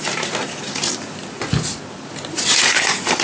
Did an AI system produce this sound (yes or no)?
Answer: no